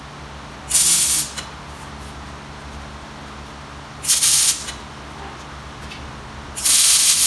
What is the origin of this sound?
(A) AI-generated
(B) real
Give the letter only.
B